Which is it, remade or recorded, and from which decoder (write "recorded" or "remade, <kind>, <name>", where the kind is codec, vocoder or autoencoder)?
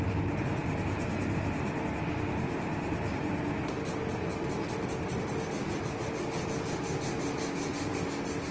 recorded